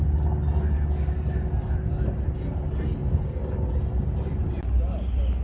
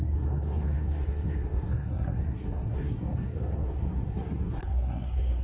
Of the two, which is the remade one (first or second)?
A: second